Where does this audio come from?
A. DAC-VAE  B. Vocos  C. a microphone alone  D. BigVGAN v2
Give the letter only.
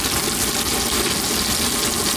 C